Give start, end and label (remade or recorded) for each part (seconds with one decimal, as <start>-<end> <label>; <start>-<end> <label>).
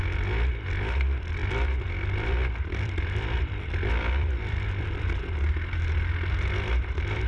0.0-1.4 recorded; 1.4-5.2 remade; 5.2-7.3 recorded